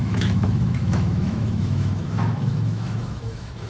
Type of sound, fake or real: fake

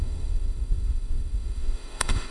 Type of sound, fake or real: fake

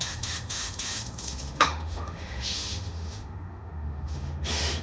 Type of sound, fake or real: fake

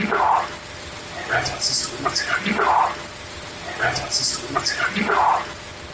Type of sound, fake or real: real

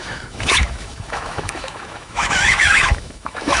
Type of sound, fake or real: fake